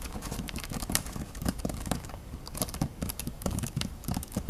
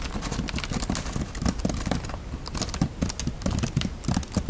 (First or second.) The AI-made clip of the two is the first